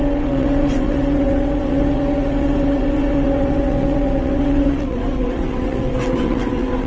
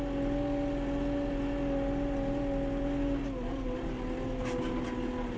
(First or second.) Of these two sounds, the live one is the second